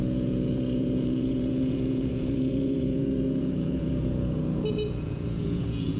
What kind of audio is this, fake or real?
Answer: fake